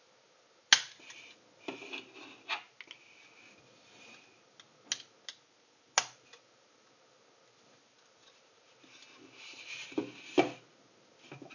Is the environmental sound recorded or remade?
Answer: recorded